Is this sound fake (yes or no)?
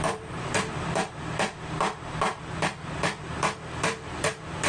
yes